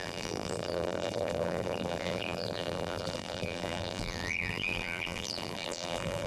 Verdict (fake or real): fake